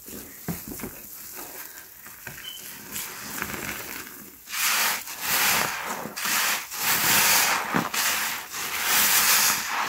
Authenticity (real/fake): real